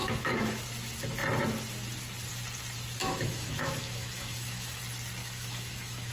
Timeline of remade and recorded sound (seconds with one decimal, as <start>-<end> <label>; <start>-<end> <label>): 0.0-0.6 remade; 0.6-3.0 recorded; 3.0-4.8 remade; 4.8-5.2 recorded; 5.2-6.1 remade